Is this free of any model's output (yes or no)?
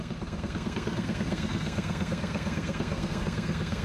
no